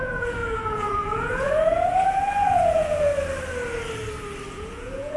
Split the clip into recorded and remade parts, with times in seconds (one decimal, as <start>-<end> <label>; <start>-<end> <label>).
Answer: 0.0-3.1 remade; 3.1-4.5 recorded; 4.5-5.2 remade